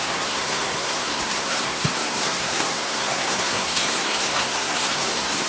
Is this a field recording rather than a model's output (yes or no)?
no